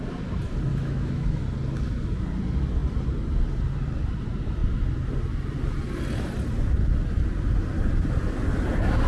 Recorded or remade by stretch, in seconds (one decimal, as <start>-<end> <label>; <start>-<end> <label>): 0.0-0.7 recorded; 0.7-1.4 remade; 1.4-9.1 recorded